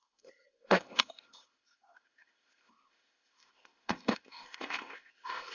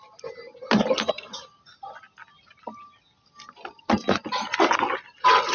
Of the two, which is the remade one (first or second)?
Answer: first